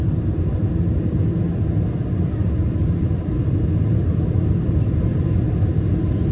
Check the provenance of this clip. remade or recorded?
remade